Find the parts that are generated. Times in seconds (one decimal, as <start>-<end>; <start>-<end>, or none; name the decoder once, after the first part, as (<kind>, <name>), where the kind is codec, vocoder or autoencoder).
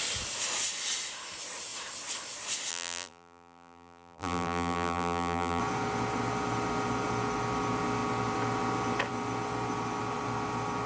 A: 2.7-5.6 (vocoder, BigVGAN v2)